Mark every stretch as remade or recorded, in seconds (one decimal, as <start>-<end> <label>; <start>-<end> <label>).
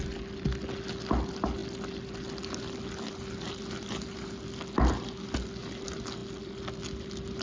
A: 0.0-7.4 recorded